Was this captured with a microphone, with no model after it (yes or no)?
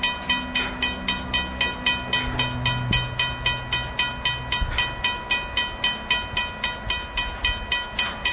yes